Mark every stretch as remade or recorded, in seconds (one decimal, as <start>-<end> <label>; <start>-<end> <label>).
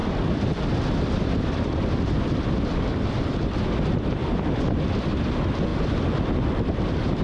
0.0-3.6 remade; 3.6-4.2 recorded; 4.2-4.8 remade; 4.8-5.7 recorded; 5.7-6.3 remade; 6.3-7.2 recorded